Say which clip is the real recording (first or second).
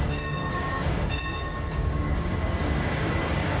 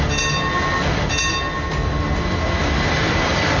second